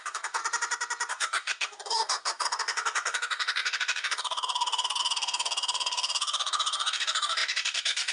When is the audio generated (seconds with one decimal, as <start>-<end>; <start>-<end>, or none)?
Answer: 0.0-0.4; 1.1-8.1